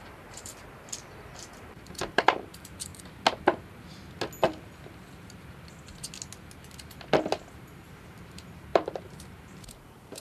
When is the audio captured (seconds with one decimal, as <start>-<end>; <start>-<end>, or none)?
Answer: 0.5-1.1; 2.9-7.6